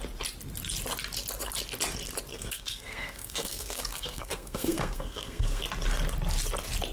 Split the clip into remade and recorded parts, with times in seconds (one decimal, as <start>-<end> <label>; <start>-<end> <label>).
0.0-2.3 recorded; 2.3-5.6 remade; 5.6-6.9 recorded